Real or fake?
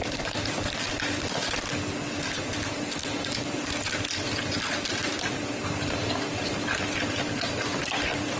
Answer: real